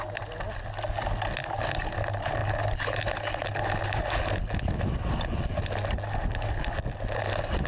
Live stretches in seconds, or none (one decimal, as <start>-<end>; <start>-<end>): 0.0-7.7